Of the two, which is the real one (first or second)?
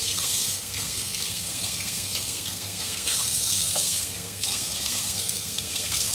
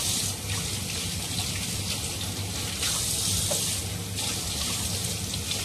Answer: second